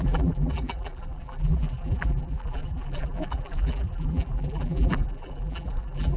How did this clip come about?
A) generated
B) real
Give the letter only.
A